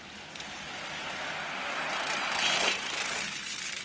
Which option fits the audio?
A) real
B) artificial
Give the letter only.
A